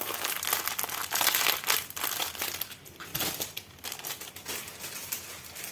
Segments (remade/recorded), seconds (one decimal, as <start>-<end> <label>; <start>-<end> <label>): 0.0-5.7 recorded